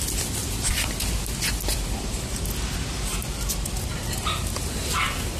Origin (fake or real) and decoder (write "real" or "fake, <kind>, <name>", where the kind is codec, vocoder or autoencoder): real